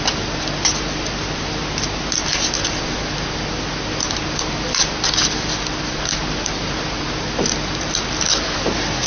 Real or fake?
real